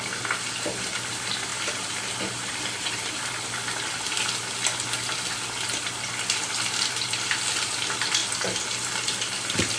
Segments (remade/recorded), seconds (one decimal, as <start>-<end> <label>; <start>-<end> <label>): 0.0-1.5 recorded; 1.5-3.3 remade; 3.3-9.8 recorded